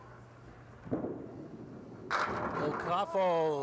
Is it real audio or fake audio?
real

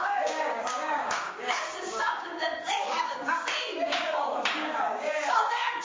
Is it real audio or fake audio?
fake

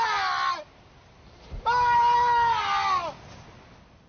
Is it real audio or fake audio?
real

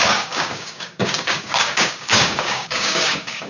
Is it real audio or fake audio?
fake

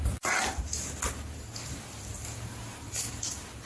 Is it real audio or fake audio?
real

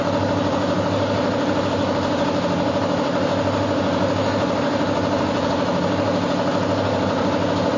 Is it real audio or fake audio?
real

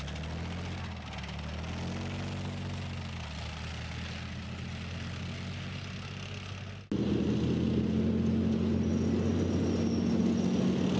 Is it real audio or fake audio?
real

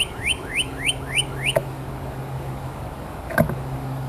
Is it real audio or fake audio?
fake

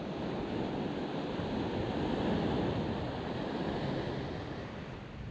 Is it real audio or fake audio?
real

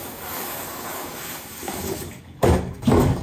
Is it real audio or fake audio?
fake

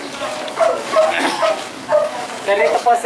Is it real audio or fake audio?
fake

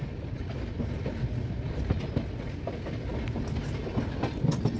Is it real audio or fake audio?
real